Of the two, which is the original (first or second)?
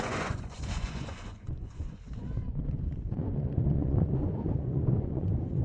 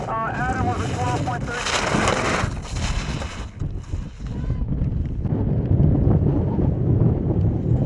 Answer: second